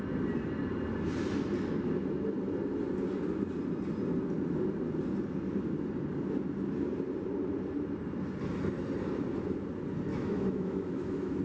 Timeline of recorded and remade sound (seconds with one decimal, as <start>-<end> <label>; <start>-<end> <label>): 0.0-10.1 recorded; 10.1-11.4 remade